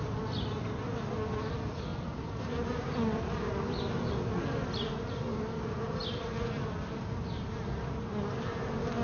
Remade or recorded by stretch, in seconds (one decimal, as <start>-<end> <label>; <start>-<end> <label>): 0.0-9.0 recorded